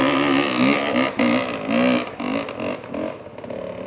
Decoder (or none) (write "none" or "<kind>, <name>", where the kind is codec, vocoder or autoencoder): none